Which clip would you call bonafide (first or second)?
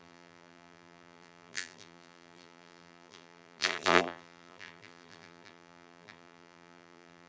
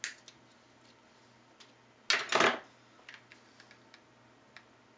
second